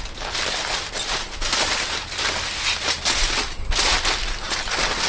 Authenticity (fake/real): real